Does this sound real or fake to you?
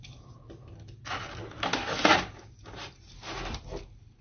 real